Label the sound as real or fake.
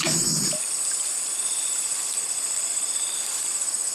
real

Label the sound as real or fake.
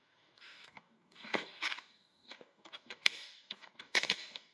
fake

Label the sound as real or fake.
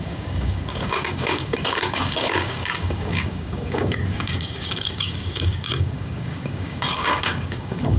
fake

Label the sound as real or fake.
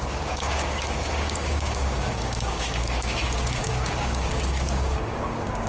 fake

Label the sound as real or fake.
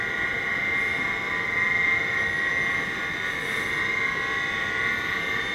real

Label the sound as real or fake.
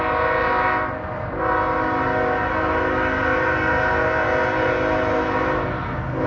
real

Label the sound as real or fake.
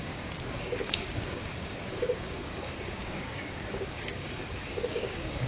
fake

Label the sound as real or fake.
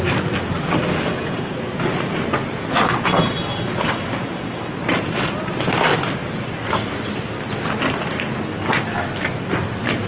real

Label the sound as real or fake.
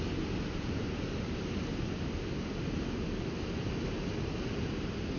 real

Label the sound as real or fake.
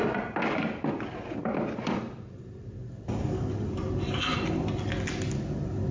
real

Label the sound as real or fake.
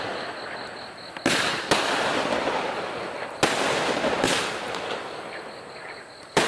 real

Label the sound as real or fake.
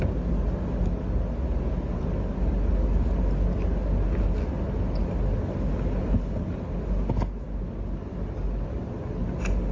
real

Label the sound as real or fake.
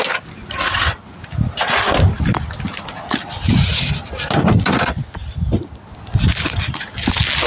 real